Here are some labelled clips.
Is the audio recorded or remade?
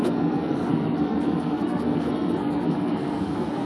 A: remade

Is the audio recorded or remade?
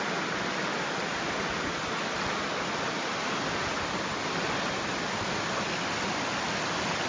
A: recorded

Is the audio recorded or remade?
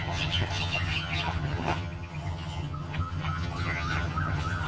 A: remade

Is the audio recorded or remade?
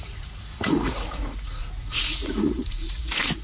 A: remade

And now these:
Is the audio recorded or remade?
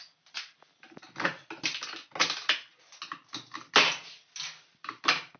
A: recorded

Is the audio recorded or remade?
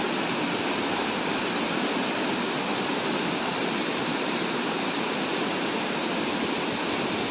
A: recorded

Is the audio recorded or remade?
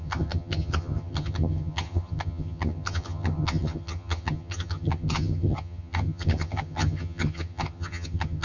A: remade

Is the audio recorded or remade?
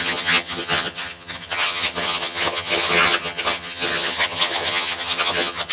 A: remade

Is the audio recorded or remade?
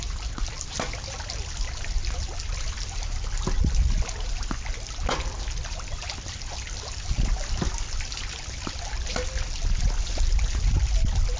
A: recorded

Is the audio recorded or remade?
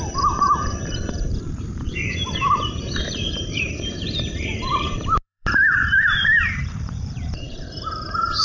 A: remade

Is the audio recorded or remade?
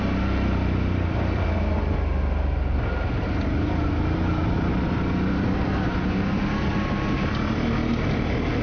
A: recorded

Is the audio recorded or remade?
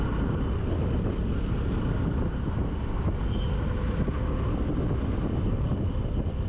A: recorded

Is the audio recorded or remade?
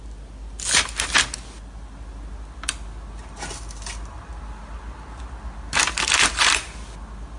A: recorded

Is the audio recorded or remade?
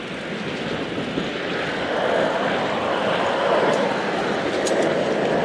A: recorded